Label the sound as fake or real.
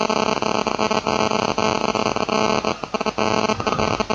real